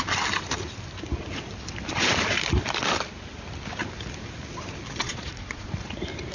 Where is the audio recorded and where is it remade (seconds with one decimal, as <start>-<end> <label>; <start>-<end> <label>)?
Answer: 0.0-5.0 recorded; 5.0-5.7 remade; 5.7-6.3 recorded